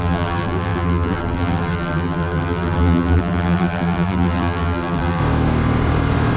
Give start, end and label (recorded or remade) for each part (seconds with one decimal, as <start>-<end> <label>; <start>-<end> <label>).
0.0-5.2 remade; 5.2-6.4 recorded